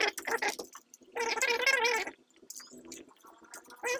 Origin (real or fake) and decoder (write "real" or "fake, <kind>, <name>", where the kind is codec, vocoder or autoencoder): real